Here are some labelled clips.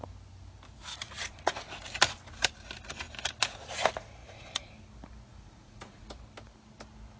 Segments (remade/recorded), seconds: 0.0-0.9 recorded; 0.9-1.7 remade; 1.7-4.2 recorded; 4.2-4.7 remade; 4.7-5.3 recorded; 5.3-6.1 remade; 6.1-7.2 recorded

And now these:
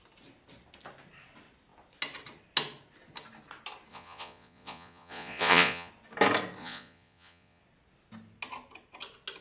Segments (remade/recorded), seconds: 0.0-3.9 recorded; 3.9-5.9 remade; 5.9-6.6 recorded; 6.6-7.6 remade; 7.6-9.4 recorded

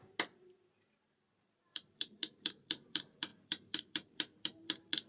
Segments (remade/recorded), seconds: 0.0-1.7 recorded; 1.7-5.1 remade

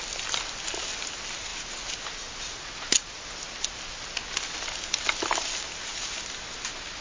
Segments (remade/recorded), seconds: 0.0-7.0 recorded

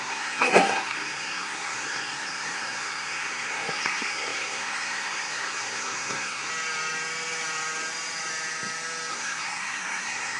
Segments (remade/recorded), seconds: 0.0-6.5 remade; 6.5-9.1 recorded; 9.1-10.4 remade

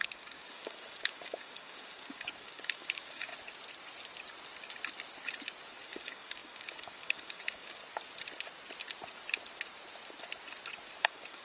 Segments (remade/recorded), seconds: 0.0-3.3 remade; 3.3-5.9 recorded; 5.9-7.8 remade; 7.8-11.0 recorded; 11.0-11.4 remade